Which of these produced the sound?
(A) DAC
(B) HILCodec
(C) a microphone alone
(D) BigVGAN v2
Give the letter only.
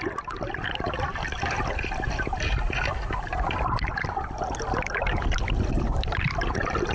C